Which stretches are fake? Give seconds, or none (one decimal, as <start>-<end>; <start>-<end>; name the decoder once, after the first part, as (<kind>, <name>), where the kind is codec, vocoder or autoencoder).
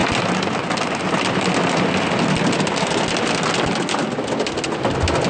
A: none